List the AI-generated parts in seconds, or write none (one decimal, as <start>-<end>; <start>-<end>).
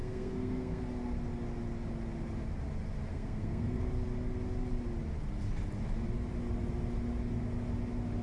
0.0-0.8; 3.1-3.9